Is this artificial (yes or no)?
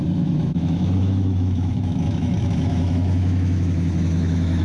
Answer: yes